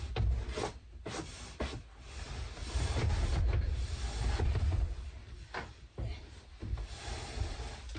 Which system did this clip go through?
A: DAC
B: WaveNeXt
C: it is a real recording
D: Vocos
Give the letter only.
C